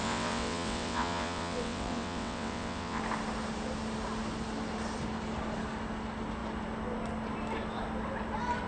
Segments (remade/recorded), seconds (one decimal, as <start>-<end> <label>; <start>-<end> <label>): 0.0-3.0 remade; 3.0-8.7 recorded